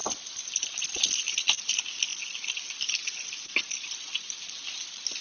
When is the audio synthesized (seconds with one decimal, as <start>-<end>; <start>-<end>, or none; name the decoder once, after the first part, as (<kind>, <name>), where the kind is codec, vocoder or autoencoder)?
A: none